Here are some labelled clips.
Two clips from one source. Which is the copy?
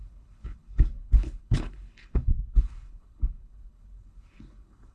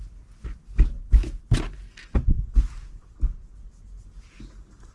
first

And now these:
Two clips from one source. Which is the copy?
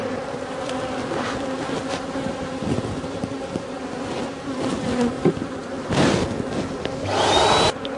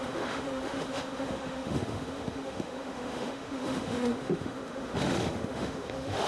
second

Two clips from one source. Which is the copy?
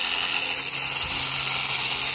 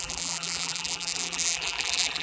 second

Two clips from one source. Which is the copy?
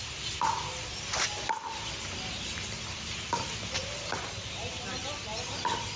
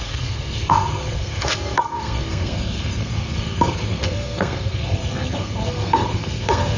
second